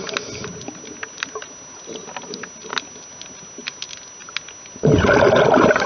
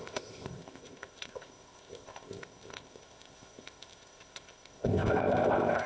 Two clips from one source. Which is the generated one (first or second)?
second